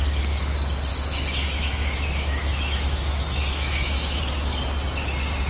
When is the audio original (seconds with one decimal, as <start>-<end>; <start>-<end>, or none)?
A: 0.0-0.9; 4.2-5.5